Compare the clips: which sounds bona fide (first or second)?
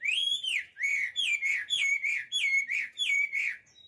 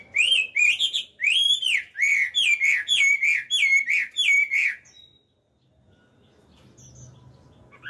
second